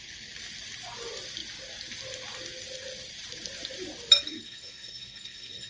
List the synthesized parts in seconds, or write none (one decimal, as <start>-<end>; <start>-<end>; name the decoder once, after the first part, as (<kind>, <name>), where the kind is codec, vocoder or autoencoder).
4.3-5.7 (codec, SNAC)